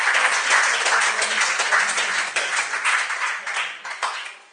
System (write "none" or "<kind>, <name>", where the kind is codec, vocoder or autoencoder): vocoder, Vocos